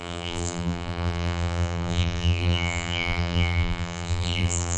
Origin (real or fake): fake